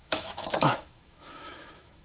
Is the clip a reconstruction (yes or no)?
yes